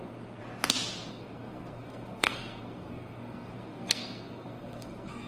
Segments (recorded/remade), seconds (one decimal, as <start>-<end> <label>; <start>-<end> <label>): 0.0-0.4 remade; 0.4-1.1 recorded; 1.1-5.3 remade